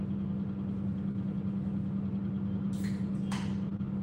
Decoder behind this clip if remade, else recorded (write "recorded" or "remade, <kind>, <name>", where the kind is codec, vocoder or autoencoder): recorded